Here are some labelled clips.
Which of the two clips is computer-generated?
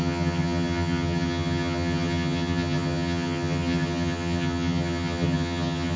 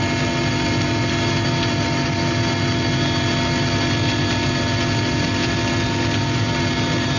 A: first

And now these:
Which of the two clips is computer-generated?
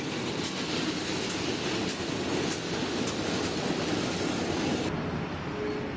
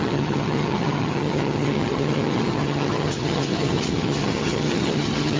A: second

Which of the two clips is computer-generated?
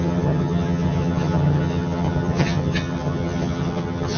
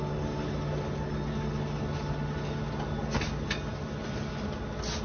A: first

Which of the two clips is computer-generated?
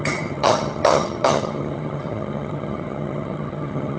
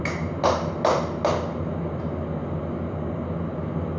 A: first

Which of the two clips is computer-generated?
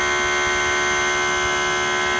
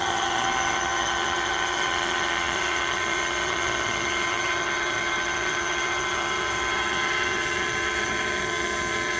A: second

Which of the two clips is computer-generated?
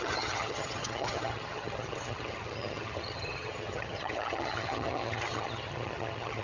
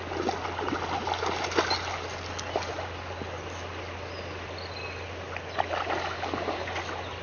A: first